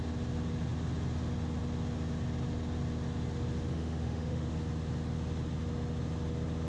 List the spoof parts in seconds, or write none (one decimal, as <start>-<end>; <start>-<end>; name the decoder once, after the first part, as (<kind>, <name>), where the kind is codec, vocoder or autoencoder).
3.7-4.5 (autoencoder, DAC-VAE)